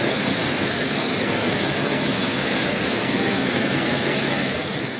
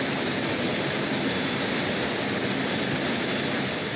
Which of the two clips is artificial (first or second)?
first